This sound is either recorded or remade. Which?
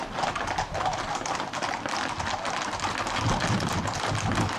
recorded